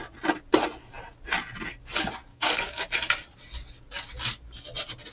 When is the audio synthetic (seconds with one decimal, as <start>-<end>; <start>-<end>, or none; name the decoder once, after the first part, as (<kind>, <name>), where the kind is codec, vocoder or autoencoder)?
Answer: 2.3-2.8 (codec, DAC)